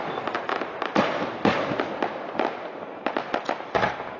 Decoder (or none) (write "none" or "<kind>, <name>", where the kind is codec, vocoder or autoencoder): none